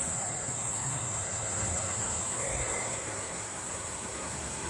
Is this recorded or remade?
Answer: remade